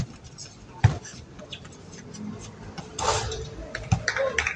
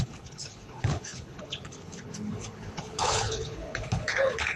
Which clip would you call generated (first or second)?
second